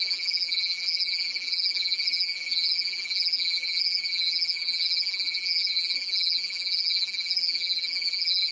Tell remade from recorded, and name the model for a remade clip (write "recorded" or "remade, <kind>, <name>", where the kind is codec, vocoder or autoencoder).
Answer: remade, vocoder, BigVGAN v2